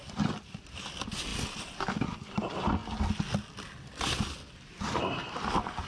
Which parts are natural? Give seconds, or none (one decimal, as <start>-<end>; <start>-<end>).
0.0-5.9